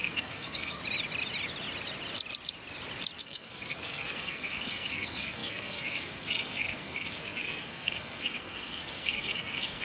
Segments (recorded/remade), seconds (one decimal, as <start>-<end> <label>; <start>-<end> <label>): 0.0-0.8 remade; 0.8-3.2 recorded; 3.2-9.8 remade

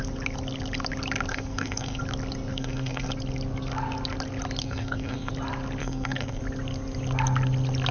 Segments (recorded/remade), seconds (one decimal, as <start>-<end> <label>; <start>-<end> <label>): 0.0-1.3 recorded; 1.3-2.0 remade; 2.0-2.5 recorded; 2.5-3.1 remade; 3.1-4.6 recorded; 4.6-5.3 remade; 5.3-5.8 recorded; 5.8-6.4 remade; 6.4-7.9 recorded